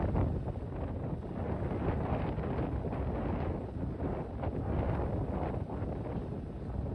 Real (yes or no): yes